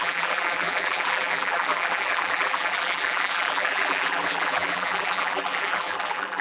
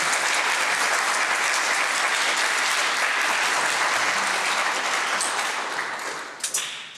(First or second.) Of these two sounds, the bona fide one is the second